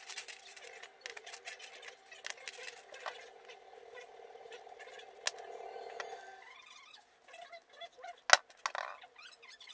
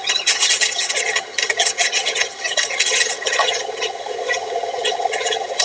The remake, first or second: second